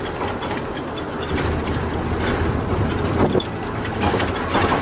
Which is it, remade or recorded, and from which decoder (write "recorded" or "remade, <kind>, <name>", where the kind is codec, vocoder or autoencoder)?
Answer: recorded